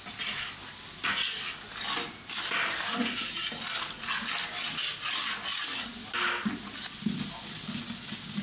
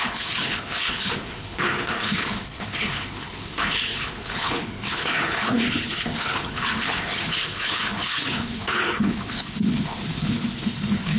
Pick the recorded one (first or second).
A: first